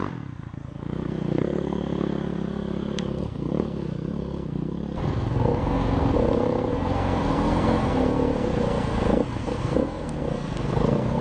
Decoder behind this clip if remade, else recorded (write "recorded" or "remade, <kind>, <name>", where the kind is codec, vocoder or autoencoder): remade, codec, SNAC